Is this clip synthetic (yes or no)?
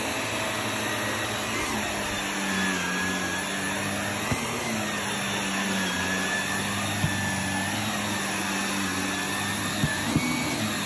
no